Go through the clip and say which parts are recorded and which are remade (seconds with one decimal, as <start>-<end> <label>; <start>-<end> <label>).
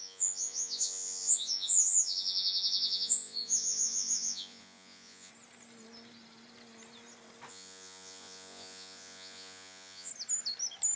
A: 0.0-5.3 remade; 5.3-7.5 recorded; 7.5-10.1 remade; 10.1-11.0 recorded